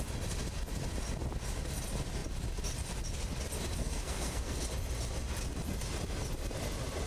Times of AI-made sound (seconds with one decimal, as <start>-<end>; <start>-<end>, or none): 3.8-4.6

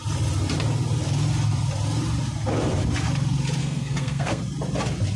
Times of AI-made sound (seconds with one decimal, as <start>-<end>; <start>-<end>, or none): 3.6-4.4

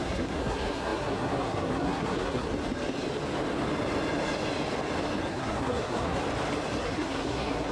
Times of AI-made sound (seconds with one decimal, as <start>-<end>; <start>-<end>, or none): 0.0-2.5; 5.3-6.2; 6.8-7.7

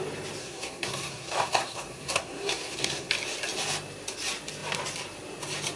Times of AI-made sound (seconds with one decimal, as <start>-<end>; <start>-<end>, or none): 0.4-3.1